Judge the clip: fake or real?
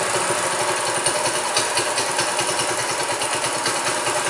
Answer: real